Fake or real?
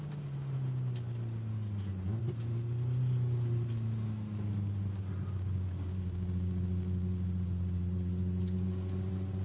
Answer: real